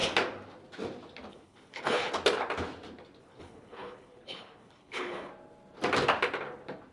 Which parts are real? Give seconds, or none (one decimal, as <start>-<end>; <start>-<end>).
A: 0.0-1.3; 2.1-3.2; 5.3-6.9